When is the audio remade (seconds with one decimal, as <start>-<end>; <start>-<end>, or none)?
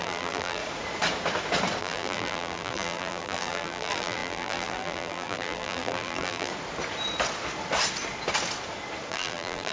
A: 0.0-0.6; 1.8-6.5; 9.1-9.7